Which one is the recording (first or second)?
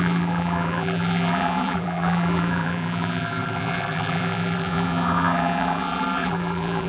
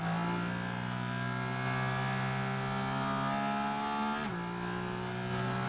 second